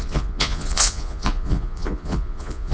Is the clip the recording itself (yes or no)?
no